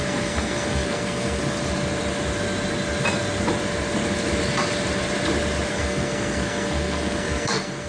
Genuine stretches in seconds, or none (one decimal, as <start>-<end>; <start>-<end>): 1.4-5.7